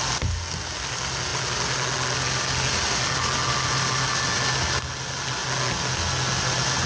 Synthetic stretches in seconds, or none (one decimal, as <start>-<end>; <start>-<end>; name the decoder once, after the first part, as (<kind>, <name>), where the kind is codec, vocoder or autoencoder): none